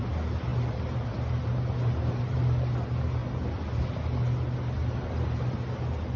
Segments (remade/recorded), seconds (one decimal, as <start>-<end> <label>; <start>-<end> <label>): 0.0-6.2 recorded